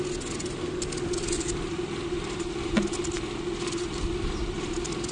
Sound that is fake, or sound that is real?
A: real